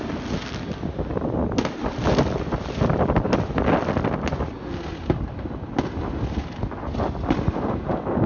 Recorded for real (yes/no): yes